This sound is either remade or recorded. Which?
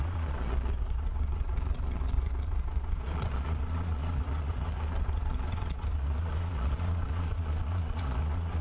remade